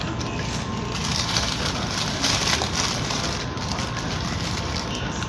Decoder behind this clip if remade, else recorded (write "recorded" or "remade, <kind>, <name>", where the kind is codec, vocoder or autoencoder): recorded